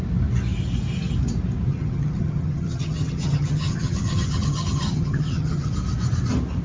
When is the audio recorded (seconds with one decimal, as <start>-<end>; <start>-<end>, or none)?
0.0-1.7; 5.7-6.6